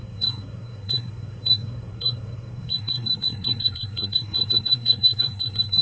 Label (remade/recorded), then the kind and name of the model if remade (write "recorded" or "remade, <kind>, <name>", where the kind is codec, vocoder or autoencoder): remade, codec, SNAC